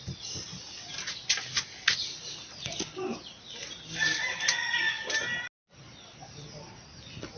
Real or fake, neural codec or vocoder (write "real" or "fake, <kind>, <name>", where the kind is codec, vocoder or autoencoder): real